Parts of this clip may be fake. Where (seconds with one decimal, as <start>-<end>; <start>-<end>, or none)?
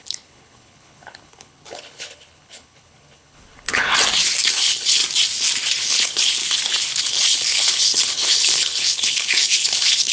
0.0-3.9; 4.5-5.0; 5.7-6.4; 7.0-10.1